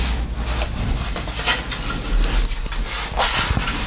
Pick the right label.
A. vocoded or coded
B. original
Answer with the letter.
B